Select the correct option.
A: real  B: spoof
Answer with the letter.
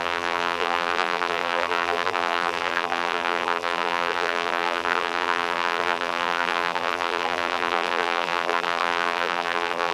B